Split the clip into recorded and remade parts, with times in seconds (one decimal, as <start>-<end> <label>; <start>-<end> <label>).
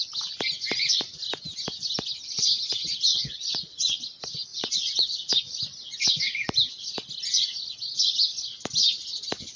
0.0-3.1 recorded; 3.1-3.6 remade; 3.6-4.5 recorded; 4.5-5.3 remade; 5.3-9.6 recorded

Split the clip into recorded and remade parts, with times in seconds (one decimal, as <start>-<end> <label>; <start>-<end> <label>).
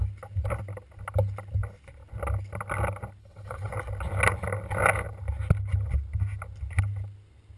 0.0-3.2 recorded; 3.2-3.7 remade; 3.7-7.6 recorded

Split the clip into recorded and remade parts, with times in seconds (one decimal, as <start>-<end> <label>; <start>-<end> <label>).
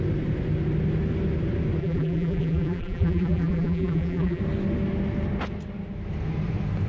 0.0-1.8 recorded; 1.8-4.4 remade; 4.4-6.9 recorded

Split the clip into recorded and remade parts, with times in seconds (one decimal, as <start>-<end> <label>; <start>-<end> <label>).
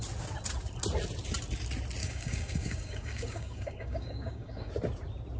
0.0-2.0 recorded; 2.0-4.7 remade; 4.7-5.4 recorded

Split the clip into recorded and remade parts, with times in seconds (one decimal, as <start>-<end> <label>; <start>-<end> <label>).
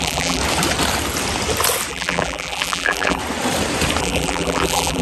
0.0-0.4 remade; 0.4-1.9 recorded; 1.9-3.2 remade; 3.2-4.0 recorded; 4.0-5.0 remade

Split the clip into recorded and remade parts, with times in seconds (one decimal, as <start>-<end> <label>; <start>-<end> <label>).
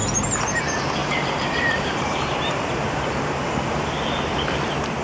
0.0-0.6 remade; 0.6-1.0 recorded; 1.0-3.9 remade; 3.9-5.0 recorded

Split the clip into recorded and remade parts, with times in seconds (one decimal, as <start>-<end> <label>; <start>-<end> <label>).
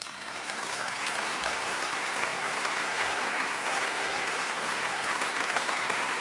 0.0-6.2 remade